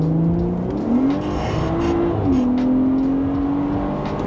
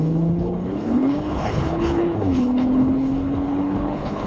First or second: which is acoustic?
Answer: first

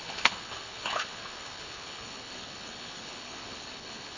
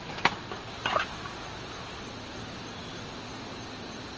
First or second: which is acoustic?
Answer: second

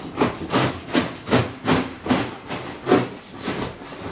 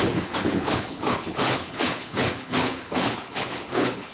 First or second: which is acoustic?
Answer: first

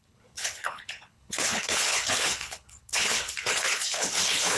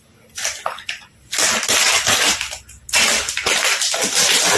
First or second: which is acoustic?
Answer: second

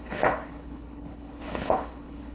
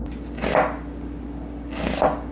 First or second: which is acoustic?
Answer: second